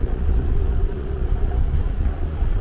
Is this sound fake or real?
fake